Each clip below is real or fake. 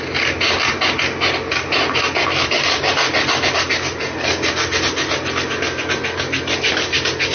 real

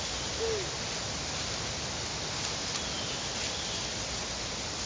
real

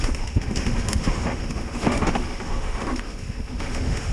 fake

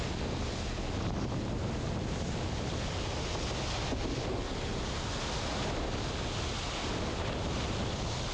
real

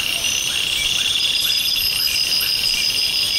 fake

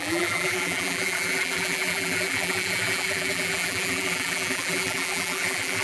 fake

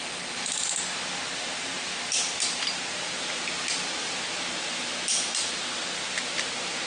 real